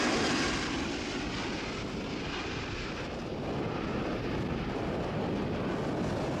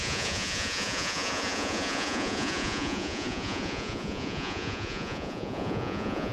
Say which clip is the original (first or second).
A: first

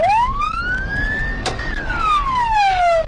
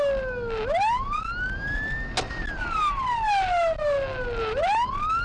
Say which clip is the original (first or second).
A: second